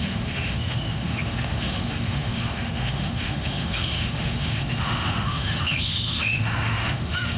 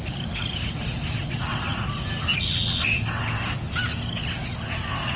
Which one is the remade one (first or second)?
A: first